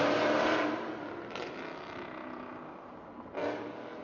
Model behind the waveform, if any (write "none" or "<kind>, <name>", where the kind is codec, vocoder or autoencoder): none